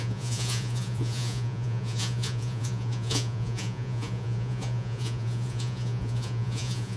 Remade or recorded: remade